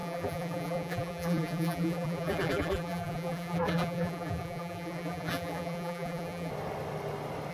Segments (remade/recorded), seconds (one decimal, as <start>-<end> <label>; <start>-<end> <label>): 0.0-6.5 remade; 6.5-7.5 recorded